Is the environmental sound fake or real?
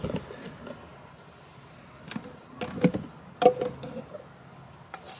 real